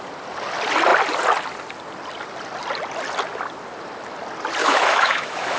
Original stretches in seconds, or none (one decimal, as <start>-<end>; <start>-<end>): 0.0-4.6